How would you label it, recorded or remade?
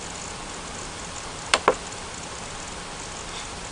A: recorded